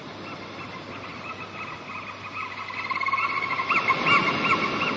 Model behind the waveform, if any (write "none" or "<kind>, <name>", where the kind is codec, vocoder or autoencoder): none